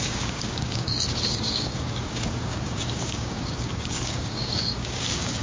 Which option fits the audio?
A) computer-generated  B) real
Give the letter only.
A